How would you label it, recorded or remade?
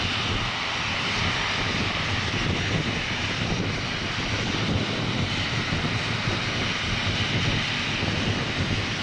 recorded